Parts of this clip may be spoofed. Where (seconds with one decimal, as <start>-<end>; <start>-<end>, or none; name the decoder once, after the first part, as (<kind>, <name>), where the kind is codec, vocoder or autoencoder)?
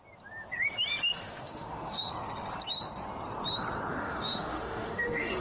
1.1-2.1 (autoencoder, DAC-VAE); 3.9-5.4